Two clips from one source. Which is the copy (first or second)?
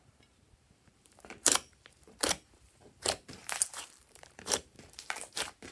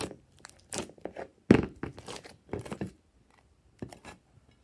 first